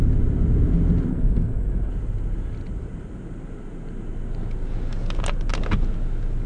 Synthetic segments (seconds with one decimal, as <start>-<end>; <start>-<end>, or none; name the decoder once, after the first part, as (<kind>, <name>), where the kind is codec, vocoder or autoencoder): 1.1-1.9 (codec, SNAC)